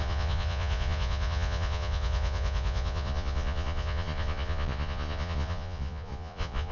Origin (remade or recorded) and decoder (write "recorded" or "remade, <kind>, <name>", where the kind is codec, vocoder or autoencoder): remade, vocoder, Vocos